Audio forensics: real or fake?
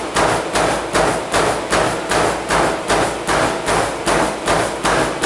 real